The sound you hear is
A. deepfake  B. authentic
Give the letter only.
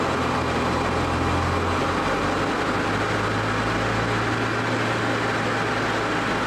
B